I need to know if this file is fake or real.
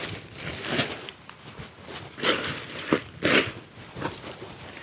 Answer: real